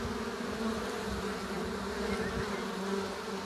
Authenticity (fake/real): real